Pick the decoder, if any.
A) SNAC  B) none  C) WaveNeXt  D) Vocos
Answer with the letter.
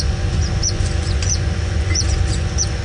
D